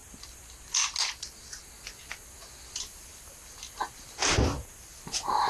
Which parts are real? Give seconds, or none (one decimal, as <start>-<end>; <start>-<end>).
0.0-5.5